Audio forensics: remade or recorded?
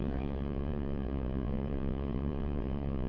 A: remade